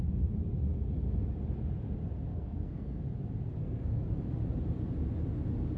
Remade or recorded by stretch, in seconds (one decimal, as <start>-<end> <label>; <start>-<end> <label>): 0.0-2.3 recorded; 2.3-3.0 remade; 3.0-3.6 recorded; 3.6-4.1 remade; 4.1-5.8 recorded